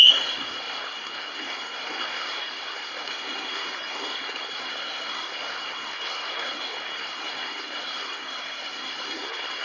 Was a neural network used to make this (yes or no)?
yes